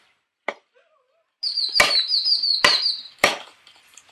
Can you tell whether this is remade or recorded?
recorded